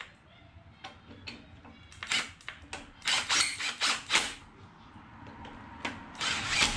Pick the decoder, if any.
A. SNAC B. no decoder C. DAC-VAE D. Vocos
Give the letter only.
B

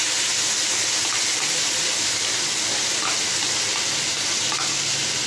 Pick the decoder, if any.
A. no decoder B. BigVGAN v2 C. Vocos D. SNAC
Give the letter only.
A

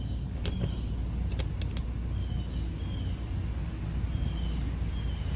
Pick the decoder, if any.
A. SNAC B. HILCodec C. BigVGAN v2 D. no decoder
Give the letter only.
D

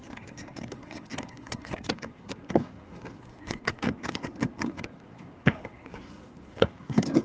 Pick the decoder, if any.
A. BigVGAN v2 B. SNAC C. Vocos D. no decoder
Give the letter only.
B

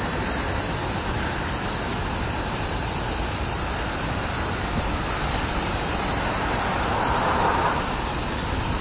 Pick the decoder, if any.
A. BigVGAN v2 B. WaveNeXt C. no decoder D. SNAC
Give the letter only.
C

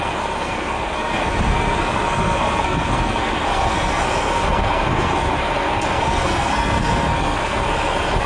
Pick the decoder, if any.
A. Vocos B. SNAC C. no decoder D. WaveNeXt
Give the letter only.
B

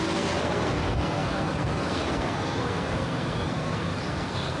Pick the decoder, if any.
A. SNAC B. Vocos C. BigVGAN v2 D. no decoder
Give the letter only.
A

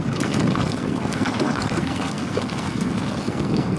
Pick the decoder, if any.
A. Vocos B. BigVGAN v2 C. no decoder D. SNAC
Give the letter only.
D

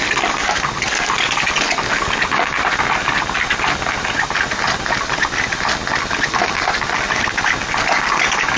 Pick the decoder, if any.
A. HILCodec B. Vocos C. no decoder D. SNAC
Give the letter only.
C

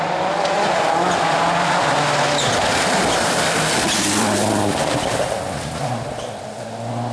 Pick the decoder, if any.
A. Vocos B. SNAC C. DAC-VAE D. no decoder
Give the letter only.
D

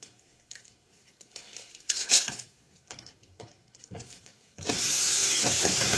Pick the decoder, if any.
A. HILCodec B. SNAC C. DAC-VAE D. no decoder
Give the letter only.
B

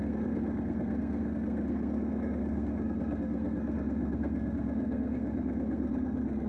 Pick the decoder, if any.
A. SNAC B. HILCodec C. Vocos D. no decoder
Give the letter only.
A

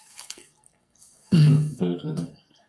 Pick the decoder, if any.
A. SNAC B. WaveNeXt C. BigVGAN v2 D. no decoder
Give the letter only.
A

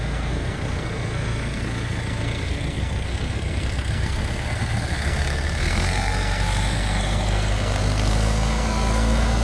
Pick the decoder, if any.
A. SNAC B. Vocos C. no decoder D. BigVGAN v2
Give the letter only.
A